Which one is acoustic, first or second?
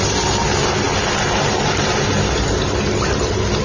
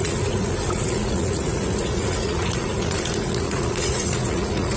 first